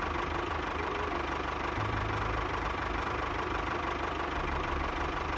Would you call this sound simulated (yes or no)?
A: yes